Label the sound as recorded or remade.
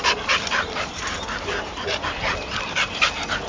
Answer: recorded